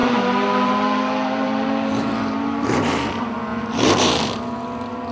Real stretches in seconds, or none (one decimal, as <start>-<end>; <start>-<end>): 3.1-3.5; 4.3-5.1